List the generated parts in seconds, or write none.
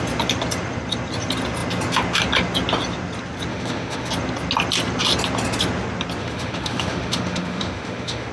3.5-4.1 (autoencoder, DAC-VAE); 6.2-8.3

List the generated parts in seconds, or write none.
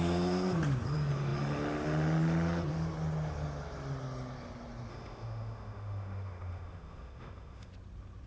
4.9-7.7 (autoencoder, DAC-VAE)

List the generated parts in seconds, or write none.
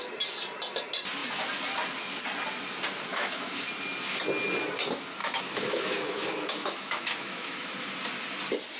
3.1-3.6 (autoencoder, DAC-VAE); 5.2-7.7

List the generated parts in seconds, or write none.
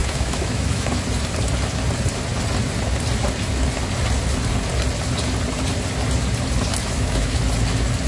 0.0-0.9 (autoencoder, DAC-VAE); 6.8-7.4